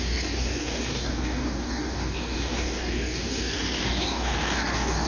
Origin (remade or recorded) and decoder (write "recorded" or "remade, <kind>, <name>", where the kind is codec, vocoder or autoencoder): remade, codec, DAC